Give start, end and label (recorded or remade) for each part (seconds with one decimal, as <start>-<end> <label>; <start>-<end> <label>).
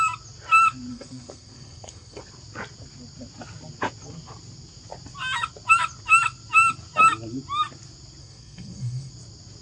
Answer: 0.0-0.9 recorded; 0.9-2.2 remade; 2.2-8.2 recorded; 8.2-9.1 remade; 9.1-9.6 recorded